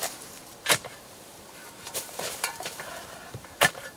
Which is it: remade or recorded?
remade